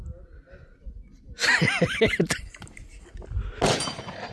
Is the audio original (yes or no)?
yes